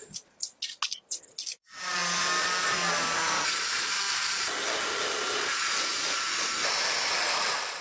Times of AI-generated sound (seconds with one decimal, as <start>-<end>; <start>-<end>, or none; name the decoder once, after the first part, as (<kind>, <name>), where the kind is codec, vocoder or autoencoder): none